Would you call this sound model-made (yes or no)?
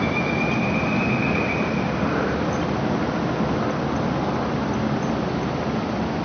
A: no